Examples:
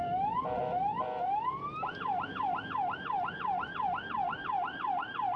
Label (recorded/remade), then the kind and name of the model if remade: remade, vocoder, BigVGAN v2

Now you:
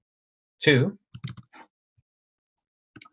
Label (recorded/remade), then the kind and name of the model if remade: recorded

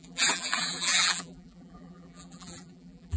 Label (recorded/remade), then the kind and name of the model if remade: remade, vocoder, BigVGAN v2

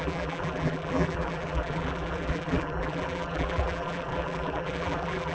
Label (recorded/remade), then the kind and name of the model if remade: remade, vocoder, BigVGAN v2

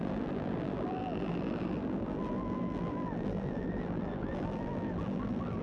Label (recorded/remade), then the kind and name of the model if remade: remade, vocoder, BigVGAN v2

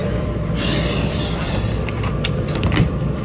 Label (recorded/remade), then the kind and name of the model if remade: remade, vocoder, BigVGAN v2